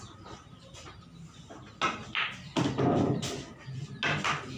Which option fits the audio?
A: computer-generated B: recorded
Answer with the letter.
B